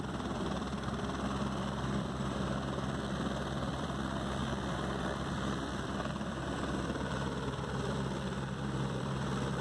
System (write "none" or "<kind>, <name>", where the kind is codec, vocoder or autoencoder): vocoder, BigVGAN v2